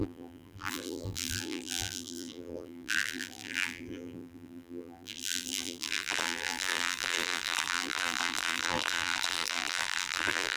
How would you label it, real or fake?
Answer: fake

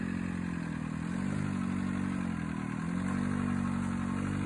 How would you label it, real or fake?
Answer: real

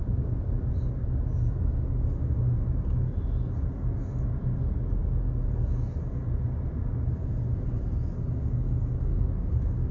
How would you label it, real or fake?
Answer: real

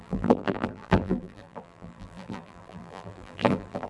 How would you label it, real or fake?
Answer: fake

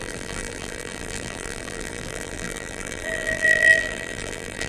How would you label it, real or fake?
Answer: fake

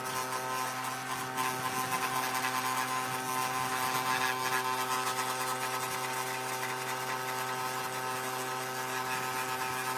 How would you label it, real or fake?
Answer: real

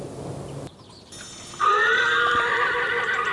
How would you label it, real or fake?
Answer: fake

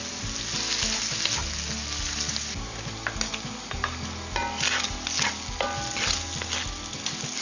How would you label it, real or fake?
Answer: real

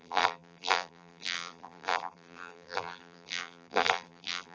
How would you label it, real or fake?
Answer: fake